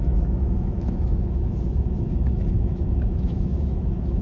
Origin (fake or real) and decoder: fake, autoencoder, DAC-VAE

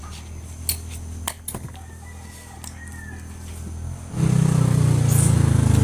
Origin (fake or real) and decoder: real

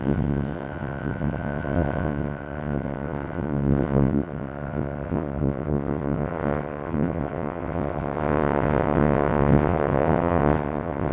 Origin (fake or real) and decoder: fake, vocoder, WaveNeXt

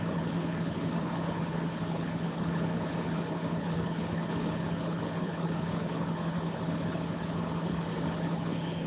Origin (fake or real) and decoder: fake, codec, HILCodec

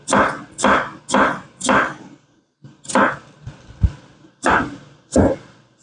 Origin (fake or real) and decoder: real